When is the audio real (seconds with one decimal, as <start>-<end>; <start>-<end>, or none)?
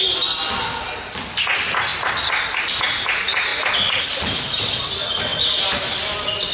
0.0-6.5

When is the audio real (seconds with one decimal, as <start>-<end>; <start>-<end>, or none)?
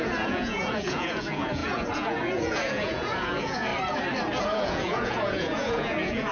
3.7-4.4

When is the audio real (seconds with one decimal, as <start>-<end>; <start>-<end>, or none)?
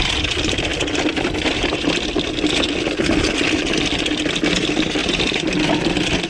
0.0-6.3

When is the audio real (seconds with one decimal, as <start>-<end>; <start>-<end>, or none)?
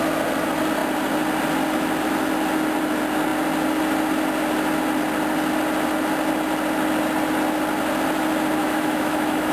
0.0-8.6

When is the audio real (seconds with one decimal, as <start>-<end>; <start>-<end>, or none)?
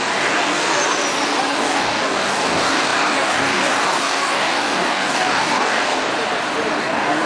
0.8-1.5; 6.1-6.8